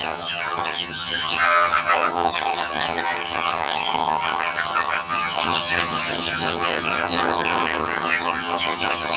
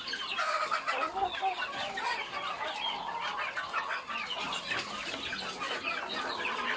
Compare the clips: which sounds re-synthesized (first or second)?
first